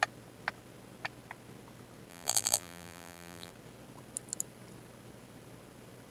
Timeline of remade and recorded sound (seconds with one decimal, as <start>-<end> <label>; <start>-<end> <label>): 0.0-2.1 recorded; 2.1-3.5 remade; 3.5-6.1 recorded